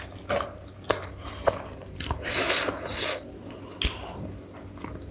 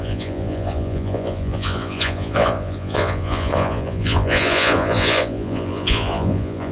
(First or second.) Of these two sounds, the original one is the first